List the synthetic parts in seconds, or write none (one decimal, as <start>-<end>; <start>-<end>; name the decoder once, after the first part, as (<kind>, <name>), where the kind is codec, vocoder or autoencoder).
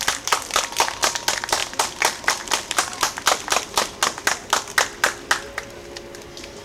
none